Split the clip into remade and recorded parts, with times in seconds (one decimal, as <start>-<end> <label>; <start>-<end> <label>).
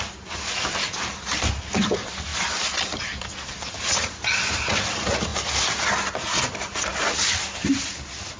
0.0-6.9 recorded; 6.9-7.9 remade; 7.9-8.4 recorded